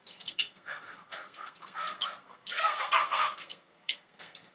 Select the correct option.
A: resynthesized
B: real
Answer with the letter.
A